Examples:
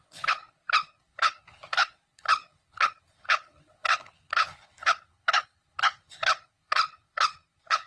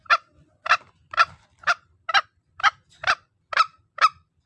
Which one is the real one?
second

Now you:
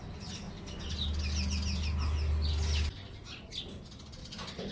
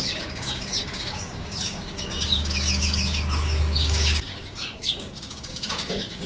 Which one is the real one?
first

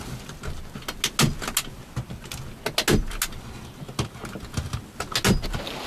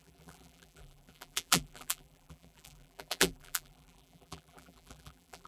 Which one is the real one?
first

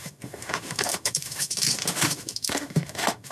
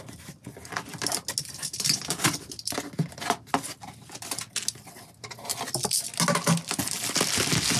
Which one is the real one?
second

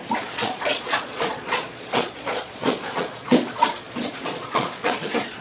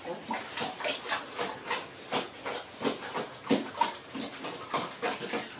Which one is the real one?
second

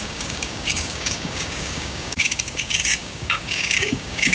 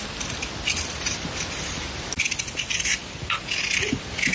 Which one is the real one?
second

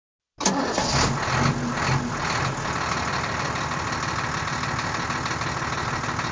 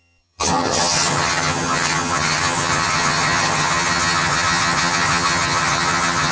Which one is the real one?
first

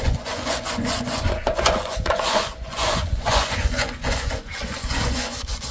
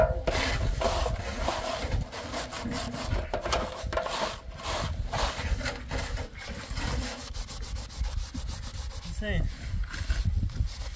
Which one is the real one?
second